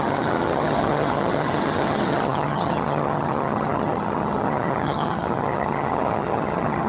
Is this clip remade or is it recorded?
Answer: remade